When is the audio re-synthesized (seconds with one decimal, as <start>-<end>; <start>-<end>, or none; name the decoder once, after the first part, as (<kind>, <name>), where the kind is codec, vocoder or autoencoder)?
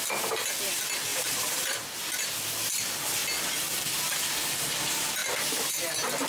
1.1-2.4 (vocoder, BigVGAN v2); 5.2-5.7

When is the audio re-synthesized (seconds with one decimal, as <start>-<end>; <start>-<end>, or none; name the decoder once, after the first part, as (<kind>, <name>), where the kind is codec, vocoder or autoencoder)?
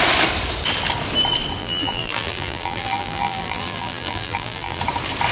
1.6-4.8 (vocoder, BigVGAN v2)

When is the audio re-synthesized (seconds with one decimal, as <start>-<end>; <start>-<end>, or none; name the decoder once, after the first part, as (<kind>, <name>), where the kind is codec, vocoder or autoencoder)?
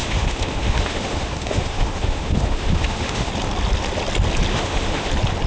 0.0-3.3 (autoencoder, DAC-VAE); 4.5-5.1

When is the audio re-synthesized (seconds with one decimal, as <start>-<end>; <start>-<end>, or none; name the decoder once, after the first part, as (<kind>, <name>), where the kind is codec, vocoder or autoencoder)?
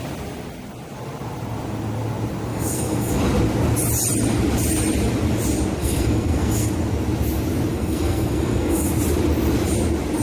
2.5-3.1 (codec, SNAC); 5.8-6.7; 7.7-8.9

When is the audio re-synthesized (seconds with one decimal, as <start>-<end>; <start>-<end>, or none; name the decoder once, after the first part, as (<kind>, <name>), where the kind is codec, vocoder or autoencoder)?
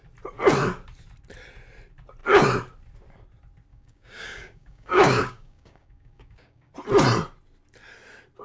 3.7-6.7 (codec, DAC)